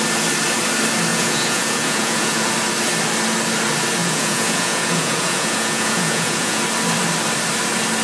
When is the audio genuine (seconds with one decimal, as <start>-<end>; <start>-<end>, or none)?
0.0-1.1; 2.5-4.0; 6.6-8.0